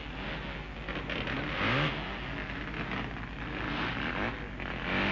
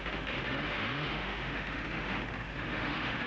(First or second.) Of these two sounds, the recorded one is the first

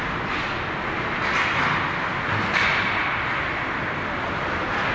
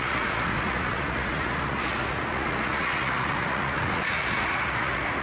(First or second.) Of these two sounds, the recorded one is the first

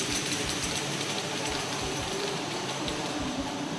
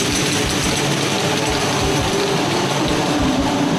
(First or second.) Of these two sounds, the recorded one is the second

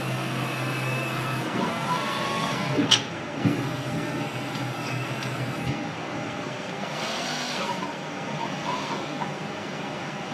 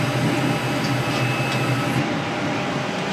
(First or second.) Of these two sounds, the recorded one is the second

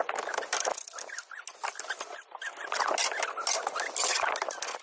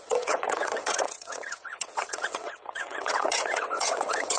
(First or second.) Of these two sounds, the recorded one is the first